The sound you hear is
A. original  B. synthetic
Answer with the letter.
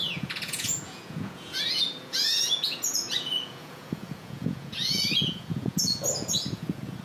B